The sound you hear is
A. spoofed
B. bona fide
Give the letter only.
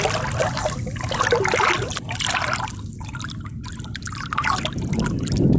B